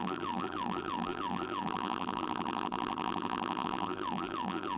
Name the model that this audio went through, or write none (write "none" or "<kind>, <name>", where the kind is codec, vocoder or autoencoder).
vocoder, BigVGAN v2